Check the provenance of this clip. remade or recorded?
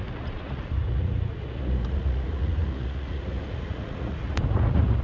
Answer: remade